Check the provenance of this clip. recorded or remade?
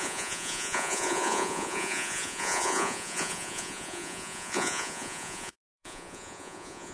remade